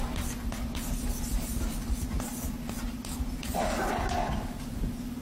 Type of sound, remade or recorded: recorded